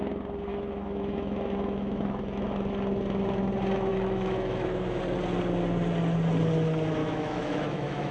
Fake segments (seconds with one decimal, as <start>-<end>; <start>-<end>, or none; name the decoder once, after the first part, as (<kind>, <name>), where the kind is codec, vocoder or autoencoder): 0.5-2.7 (autoencoder, DAC-VAE); 3.9-5.0; 7.0-8.1